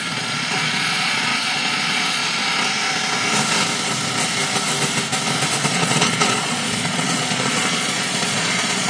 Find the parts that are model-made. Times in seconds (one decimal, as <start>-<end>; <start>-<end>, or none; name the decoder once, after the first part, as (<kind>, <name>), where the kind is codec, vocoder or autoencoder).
0.0-2.2 (vocoder, Vocos); 5.7-8.9